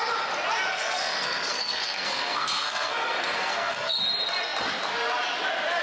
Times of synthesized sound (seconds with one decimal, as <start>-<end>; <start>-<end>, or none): 0.7-4.0